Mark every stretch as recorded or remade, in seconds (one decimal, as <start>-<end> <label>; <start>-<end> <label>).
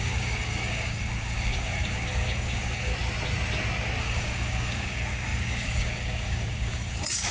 0.0-2.9 remade; 2.9-4.0 recorded; 4.0-7.3 remade